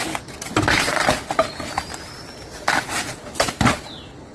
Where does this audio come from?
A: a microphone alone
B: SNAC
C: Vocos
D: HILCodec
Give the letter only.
A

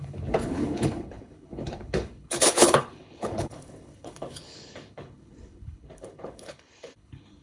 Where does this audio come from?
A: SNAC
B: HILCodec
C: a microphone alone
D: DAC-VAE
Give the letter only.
B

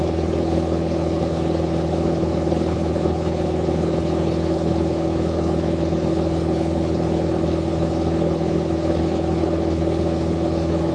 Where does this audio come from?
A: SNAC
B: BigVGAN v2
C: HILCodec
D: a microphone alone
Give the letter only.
C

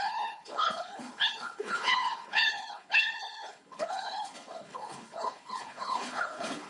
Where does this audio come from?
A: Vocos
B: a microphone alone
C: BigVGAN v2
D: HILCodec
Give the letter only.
D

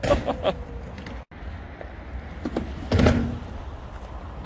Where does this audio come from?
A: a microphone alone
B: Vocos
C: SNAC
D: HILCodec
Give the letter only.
A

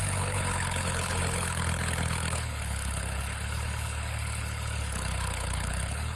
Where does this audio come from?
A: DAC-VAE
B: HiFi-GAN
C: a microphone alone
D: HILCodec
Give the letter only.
D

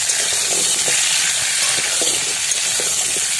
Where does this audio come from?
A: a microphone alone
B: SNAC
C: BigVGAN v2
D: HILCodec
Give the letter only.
A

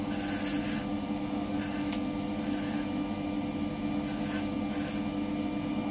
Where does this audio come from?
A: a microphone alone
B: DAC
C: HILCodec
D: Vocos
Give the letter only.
A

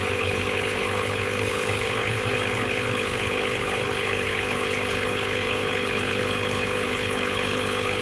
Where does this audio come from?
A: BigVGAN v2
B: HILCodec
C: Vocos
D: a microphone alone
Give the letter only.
B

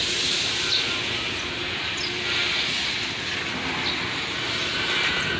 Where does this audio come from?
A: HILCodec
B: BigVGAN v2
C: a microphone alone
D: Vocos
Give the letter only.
C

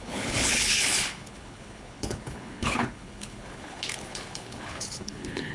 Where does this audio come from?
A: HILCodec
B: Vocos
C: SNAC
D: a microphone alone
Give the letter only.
A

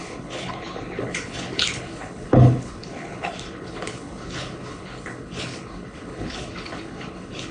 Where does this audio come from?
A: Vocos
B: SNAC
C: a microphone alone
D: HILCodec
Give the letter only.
D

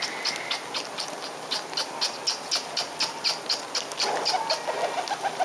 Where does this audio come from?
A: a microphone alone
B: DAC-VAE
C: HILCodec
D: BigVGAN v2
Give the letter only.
A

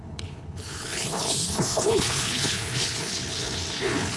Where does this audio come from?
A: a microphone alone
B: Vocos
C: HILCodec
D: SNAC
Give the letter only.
C